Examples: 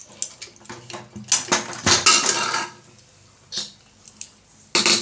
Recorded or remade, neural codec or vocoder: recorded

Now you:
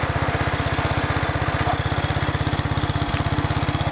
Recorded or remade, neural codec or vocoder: recorded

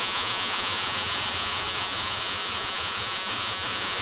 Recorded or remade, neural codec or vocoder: remade, vocoder, Vocos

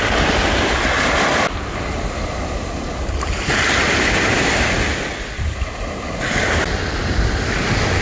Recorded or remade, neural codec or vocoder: recorded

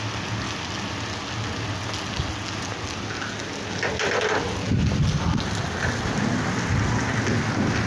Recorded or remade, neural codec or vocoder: recorded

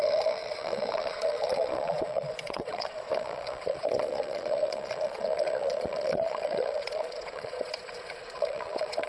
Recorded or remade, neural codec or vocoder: remade, vocoder, Vocos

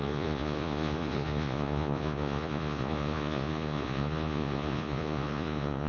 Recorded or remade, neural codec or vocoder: remade, vocoder, Vocos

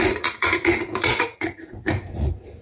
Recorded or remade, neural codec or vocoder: remade, vocoder, Vocos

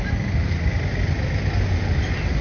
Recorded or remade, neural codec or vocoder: recorded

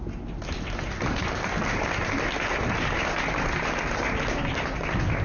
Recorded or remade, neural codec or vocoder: recorded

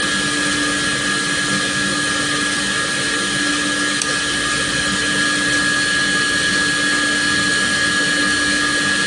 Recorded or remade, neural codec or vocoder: recorded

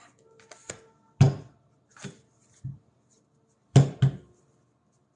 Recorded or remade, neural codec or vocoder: recorded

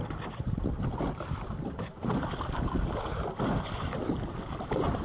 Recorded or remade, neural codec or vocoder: recorded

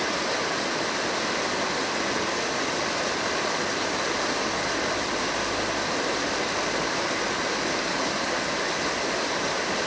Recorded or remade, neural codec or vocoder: recorded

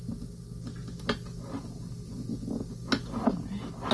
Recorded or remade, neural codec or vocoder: recorded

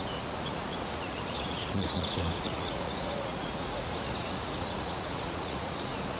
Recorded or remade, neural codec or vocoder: remade, vocoder, Vocos